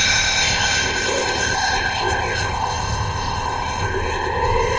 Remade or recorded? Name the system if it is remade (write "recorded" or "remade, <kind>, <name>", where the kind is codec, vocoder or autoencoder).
remade, codec, ZipCodec